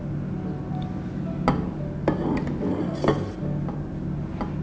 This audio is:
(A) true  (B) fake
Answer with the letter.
A